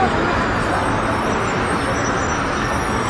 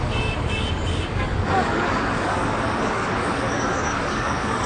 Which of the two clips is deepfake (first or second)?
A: second